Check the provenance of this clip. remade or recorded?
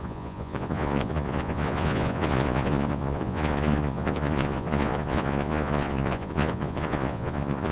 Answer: remade